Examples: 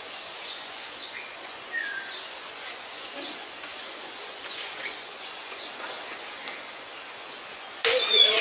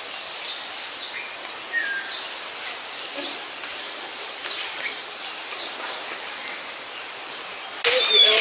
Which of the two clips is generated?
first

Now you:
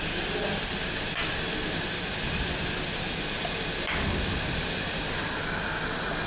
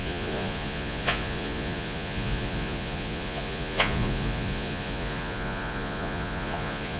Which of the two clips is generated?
second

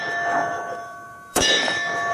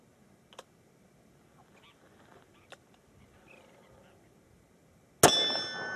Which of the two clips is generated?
first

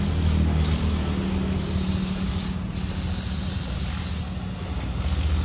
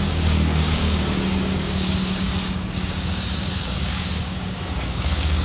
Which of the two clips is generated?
second